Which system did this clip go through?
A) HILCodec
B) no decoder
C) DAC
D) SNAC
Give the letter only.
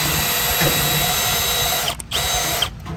B